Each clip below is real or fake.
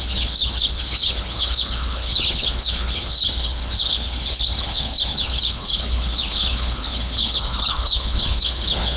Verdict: fake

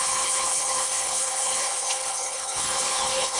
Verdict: fake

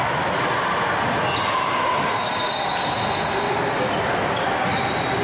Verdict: real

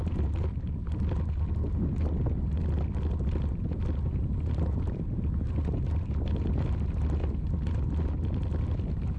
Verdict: real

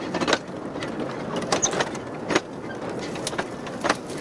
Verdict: real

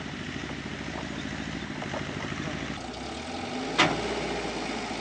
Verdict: real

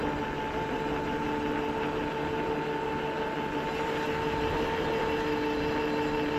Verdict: real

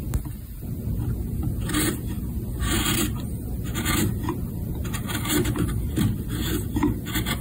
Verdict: real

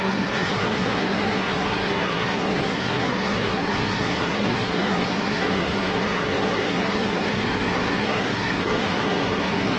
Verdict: fake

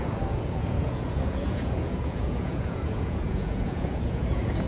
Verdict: fake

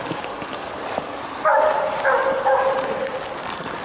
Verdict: real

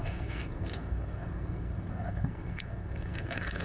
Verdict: fake